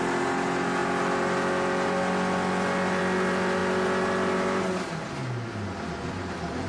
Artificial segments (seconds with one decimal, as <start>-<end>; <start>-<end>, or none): none